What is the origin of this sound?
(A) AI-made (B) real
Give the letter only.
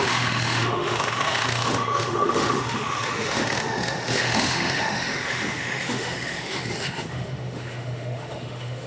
A